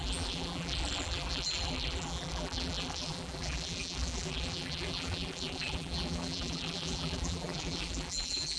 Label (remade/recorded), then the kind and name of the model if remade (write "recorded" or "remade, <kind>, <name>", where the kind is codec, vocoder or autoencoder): remade, vocoder, BigVGAN v2